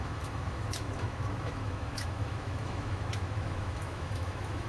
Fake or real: fake